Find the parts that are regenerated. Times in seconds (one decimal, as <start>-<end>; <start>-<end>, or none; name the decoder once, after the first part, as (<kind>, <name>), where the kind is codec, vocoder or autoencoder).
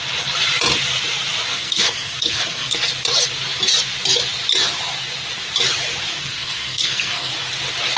1.5-2.9 (codec, SNAC); 6.2-7.3